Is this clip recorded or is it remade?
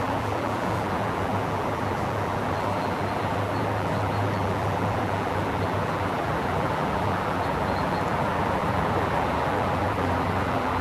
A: remade